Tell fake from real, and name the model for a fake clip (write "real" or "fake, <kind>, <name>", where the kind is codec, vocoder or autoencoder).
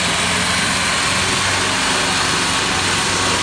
real